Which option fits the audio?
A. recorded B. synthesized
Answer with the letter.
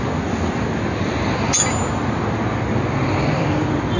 A